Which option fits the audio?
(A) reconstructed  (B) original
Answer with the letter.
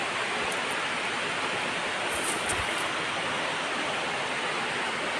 B